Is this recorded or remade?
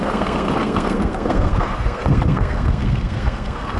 remade